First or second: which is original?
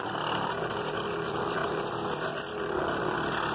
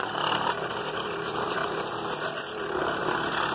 first